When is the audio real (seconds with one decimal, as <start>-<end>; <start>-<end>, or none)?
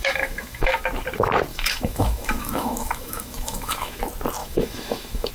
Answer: 0.8-1.5; 4.0-4.4